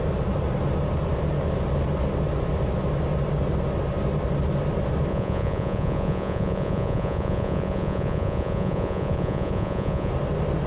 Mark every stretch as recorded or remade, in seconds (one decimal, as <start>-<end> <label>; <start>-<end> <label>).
0.0-5.1 recorded; 5.1-10.1 remade; 10.1-10.7 recorded

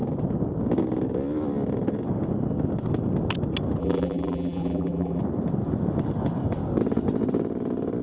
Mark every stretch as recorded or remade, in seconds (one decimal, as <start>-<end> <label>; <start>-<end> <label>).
0.0-3.8 recorded; 3.8-5.2 remade; 5.2-8.0 recorded

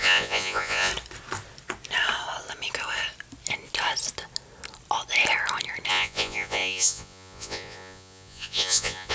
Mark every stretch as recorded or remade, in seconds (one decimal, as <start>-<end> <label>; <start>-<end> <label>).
0.0-0.9 remade; 0.9-5.9 recorded; 5.9-9.1 remade

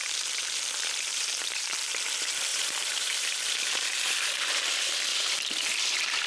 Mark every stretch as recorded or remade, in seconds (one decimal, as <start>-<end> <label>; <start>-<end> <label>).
0.0-1.7 remade; 1.7-2.5 recorded; 2.5-4.6 remade; 4.6-5.1 recorded; 5.1-6.3 remade

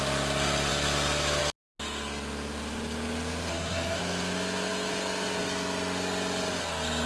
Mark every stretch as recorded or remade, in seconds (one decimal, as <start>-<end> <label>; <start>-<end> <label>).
0.0-3.5 recorded; 3.5-4.0 remade; 4.0-7.1 recorded

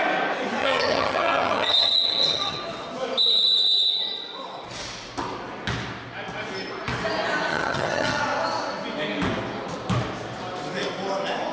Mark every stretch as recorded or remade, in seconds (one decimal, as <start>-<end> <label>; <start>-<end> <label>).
0.0-0.6 recorded; 0.6-2.6 remade; 2.6-7.5 recorded; 7.5-8.2 remade; 8.2-11.5 recorded

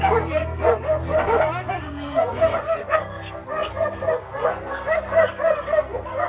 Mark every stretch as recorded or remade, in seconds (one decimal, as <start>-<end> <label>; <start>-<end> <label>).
0.0-6.3 remade